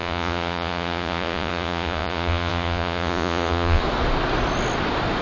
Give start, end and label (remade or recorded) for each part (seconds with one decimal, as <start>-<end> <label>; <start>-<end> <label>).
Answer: 0.0-3.8 remade; 3.8-5.2 recorded